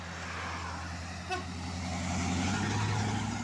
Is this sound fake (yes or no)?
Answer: no